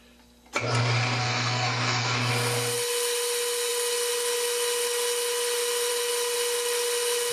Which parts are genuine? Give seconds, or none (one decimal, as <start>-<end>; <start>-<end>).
0.0-1.2; 2.3-7.3